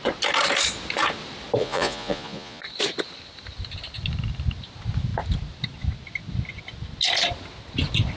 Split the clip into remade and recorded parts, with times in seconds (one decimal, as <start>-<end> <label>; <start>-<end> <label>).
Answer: 0.0-1.6 recorded; 1.6-2.6 remade; 2.6-8.2 recorded